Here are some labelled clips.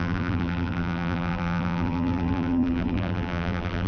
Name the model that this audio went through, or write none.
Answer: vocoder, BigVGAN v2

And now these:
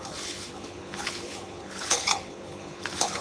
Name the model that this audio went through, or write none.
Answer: codec, HILCodec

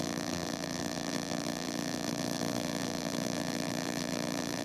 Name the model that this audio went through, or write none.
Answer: vocoder, BigVGAN v2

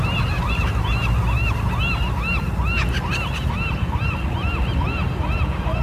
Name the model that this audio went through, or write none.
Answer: none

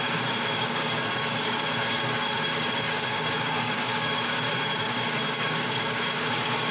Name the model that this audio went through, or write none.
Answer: codec, DAC